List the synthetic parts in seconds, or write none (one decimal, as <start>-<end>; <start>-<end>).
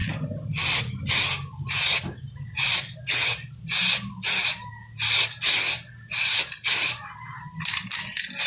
6.1-8.0